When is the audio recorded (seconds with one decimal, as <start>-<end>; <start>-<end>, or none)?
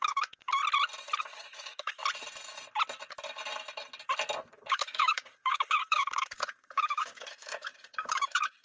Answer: 0.6-1.2; 2.0-4.5